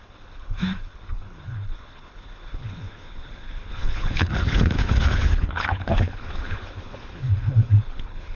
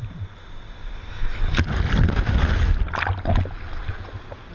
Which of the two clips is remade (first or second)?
first